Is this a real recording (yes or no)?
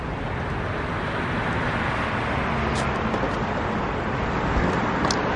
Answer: yes